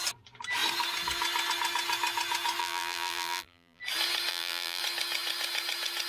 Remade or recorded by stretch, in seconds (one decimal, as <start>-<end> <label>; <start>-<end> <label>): 0.0-2.6 recorded; 2.6-3.8 remade; 3.8-4.3 recorded; 4.3-4.8 remade; 4.8-6.1 recorded